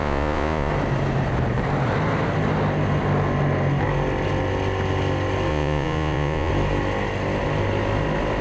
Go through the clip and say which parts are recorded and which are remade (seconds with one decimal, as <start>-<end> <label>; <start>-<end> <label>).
0.0-0.7 remade; 0.7-5.5 recorded; 5.5-6.5 remade; 6.5-8.4 recorded